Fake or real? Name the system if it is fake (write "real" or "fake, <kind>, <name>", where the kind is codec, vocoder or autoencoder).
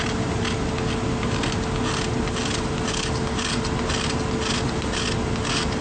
real